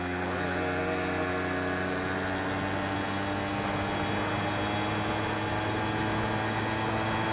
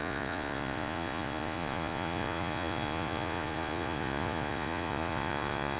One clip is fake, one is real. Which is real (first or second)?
first